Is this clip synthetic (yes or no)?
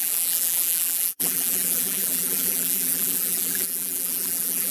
yes